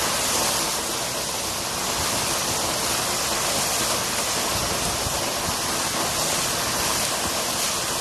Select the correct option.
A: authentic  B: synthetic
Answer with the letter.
A